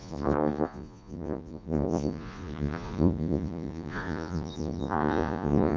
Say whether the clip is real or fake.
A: fake